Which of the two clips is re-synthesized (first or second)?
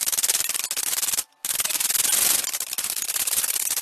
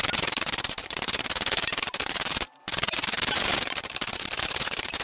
second